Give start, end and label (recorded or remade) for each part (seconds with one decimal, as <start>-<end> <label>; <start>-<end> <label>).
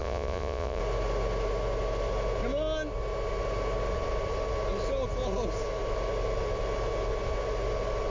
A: 0.0-0.8 remade; 0.8-8.1 recorded